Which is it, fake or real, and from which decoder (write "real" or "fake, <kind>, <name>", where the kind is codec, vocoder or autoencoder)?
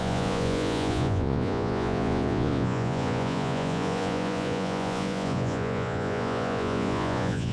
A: fake, vocoder, Vocos